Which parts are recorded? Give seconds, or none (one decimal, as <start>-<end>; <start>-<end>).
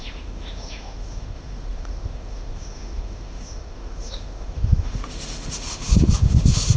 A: none